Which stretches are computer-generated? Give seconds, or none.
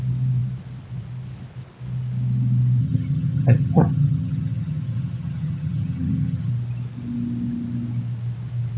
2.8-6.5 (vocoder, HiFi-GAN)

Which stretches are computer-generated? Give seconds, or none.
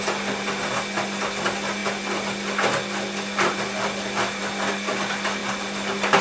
none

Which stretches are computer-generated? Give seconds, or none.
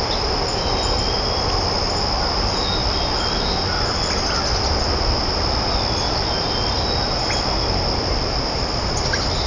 none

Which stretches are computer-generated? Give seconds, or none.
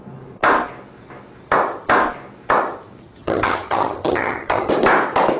3.0-4.7 (vocoder, HiFi-GAN)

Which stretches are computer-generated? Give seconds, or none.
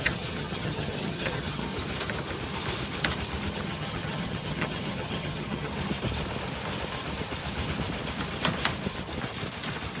0.0-1.7 (vocoder, HiFi-GAN); 3.5-5.7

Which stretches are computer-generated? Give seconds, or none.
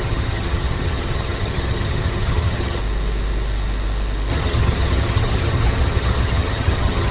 0.0-2.8 (vocoder, HiFi-GAN); 4.3-7.1